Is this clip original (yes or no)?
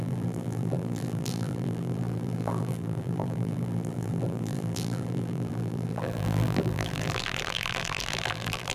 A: no